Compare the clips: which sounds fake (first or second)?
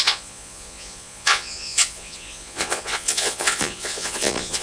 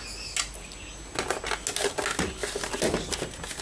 first